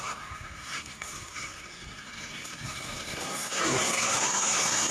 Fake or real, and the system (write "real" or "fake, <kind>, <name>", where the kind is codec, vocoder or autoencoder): fake, codec, SNAC